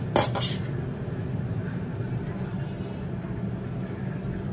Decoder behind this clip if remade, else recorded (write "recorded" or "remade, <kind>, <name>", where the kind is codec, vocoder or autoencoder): recorded